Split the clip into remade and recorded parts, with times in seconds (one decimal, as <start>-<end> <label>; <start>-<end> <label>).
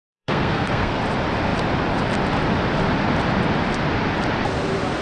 0.0-1.0 remade; 1.0-5.0 recorded